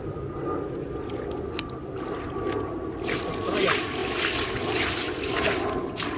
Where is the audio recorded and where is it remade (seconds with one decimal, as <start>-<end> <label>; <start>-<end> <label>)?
0.0-6.2 recorded